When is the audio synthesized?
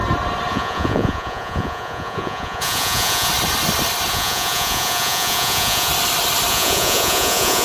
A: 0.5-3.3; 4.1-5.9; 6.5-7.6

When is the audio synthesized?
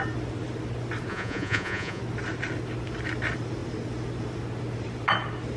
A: 1.1-2.0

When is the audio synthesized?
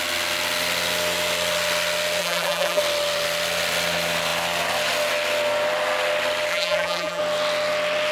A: 2.2-2.8; 6.5-7.2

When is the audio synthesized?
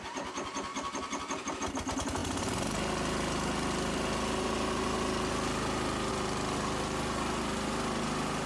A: none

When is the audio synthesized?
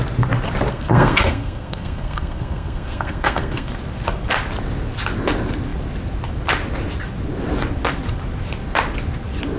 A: 0.7-3.7